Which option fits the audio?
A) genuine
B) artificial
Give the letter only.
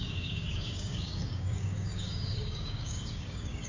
B